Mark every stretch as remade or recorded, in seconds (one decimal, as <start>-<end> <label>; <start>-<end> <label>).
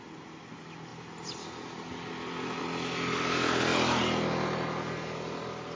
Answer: 0.0-5.8 recorded